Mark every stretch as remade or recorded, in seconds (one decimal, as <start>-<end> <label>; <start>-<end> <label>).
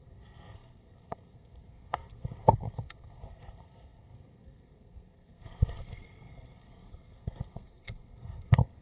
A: 0.0-8.8 remade